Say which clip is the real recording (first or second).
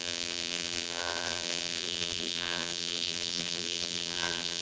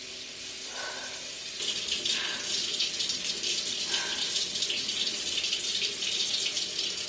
second